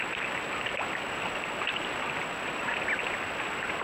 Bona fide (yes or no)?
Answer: yes